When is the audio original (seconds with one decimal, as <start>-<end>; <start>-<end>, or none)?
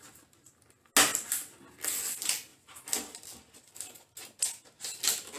0.0-5.4